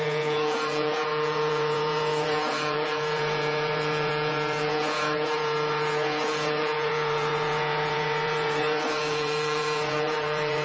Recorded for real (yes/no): no